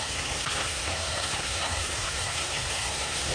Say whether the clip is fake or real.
fake